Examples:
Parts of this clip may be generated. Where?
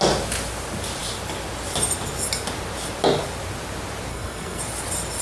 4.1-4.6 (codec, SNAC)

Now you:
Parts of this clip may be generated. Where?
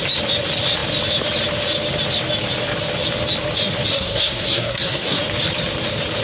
3.9-5.2 (codec, SNAC)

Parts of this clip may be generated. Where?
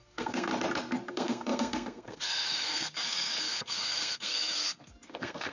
0.0-0.5 (codec, SNAC); 1.1-5.5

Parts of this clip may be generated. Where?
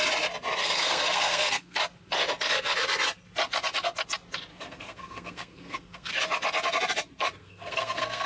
0.6-1.8 (codec, SNAC); 4.5-6.1; 7.4-8.3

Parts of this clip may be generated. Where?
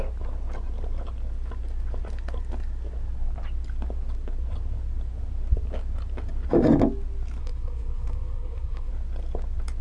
7.4-8.9 (codec, SNAC)